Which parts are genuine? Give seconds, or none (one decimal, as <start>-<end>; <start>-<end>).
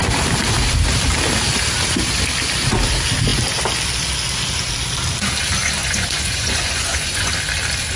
0.0-5.8; 7.3-8.0